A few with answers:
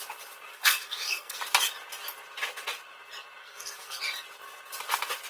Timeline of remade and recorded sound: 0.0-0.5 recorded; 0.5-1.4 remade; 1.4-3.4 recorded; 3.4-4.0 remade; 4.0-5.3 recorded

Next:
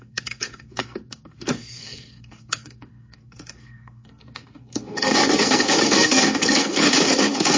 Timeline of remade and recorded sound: 0.0-7.6 remade

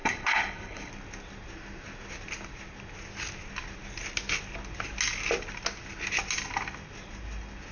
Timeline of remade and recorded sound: 0.0-0.9 remade; 0.9-7.7 recorded

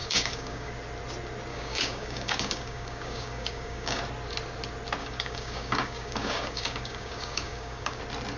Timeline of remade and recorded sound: 0.0-0.7 remade; 0.7-1.5 recorded; 1.5-4.0 remade; 4.0-5.0 recorded; 5.0-8.0 remade; 8.0-8.4 recorded

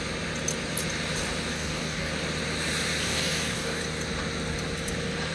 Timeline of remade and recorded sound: 0.0-1.5 recorded; 1.5-2.1 remade; 2.1-3.1 recorded; 3.1-3.8 remade; 3.8-5.3 recorded

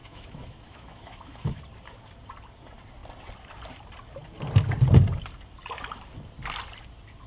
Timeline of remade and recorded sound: 0.0-1.6 remade; 1.6-7.3 recorded

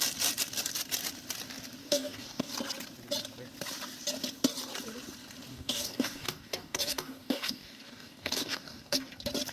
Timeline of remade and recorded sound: 0.0-1.8 recorded; 1.8-2.5 remade; 2.5-5.5 recorded; 5.5-9.1 remade; 9.1-9.5 recorded